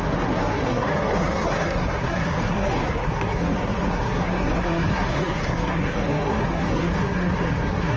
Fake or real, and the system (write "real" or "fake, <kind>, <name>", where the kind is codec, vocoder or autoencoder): fake, codec, SNAC